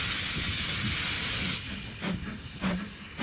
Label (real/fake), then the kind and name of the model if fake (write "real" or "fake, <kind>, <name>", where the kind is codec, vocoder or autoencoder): real